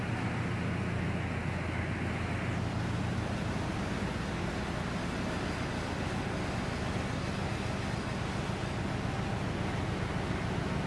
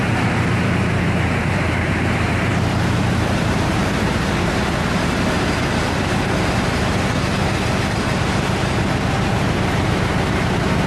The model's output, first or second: second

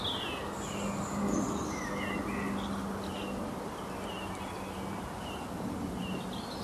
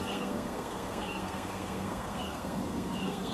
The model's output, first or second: second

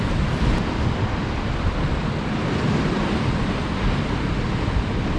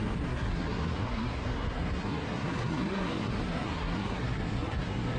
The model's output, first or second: second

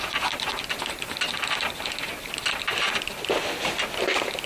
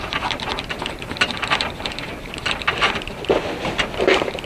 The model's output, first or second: second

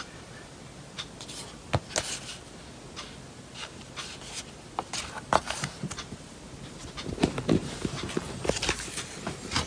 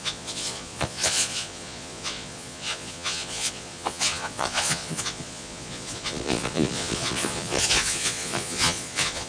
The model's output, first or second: second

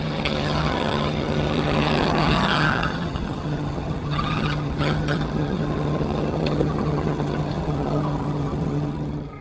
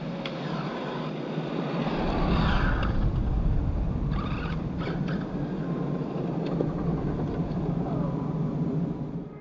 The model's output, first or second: first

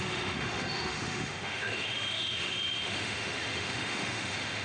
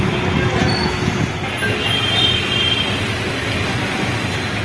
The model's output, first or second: first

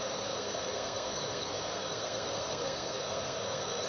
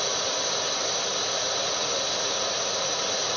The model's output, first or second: first